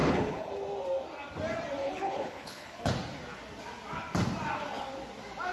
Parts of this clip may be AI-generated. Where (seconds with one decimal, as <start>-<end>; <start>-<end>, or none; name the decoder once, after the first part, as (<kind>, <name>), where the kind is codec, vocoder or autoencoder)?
0.0-0.5 (codec, HILCodec); 1.8-2.9